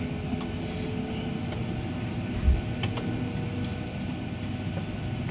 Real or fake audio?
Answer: real